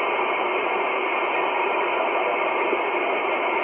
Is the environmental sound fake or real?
real